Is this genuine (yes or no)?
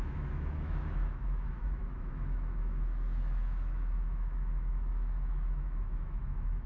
no